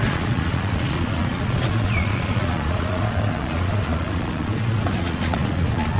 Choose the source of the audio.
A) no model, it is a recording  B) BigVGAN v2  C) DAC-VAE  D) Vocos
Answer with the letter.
D